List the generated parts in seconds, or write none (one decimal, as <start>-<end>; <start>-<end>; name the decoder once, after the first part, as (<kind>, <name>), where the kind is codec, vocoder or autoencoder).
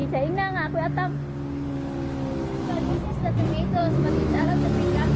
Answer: 3.8-4.5 (autoencoder, DAC-VAE)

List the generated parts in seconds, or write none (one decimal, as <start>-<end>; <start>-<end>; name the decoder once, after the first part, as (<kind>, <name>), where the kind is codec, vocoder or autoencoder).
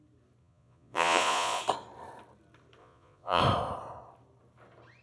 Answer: 0.4-1.6 (vocoder, Vocos); 2.8-3.4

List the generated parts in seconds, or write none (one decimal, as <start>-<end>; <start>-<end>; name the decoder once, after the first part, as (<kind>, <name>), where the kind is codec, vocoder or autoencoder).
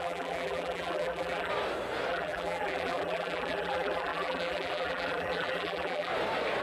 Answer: 0.0-1.5 (vocoder, BigVGAN v2); 2.1-6.1